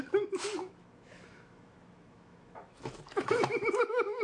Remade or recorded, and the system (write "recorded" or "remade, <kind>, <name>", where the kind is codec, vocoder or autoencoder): remade, autoencoder, DAC-VAE